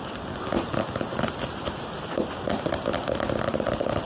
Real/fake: real